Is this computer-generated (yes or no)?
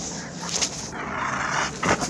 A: no